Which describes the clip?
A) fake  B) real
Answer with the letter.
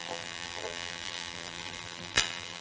A